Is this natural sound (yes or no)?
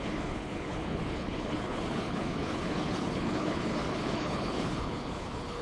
no